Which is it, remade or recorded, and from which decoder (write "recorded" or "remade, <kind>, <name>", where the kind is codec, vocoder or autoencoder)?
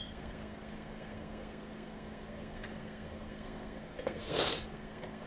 remade, codec, SNAC